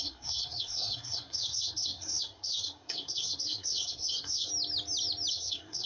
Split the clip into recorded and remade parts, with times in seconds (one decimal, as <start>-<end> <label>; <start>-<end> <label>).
0.0-4.5 remade; 4.5-5.3 recorded; 5.3-5.9 remade